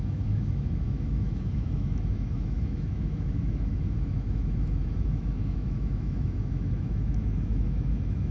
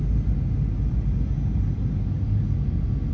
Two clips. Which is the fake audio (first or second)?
first